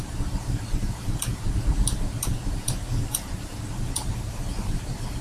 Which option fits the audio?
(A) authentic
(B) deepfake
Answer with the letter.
B